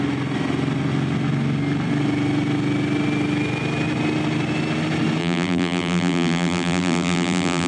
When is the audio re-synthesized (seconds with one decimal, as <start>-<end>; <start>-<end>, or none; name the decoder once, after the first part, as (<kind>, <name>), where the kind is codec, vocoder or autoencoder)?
5.2-7.7 (vocoder, BigVGAN v2)